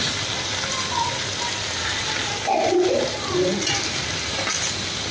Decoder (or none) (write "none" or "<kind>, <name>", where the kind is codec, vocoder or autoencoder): none